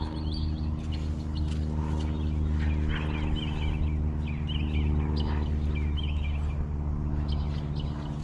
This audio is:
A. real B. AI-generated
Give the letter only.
A